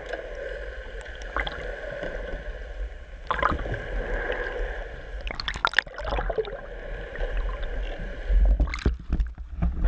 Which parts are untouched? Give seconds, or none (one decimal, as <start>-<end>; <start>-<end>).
0.0-9.9